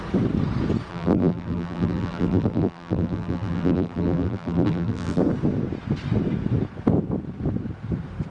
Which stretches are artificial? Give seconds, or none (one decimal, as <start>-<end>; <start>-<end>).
0.9-5.2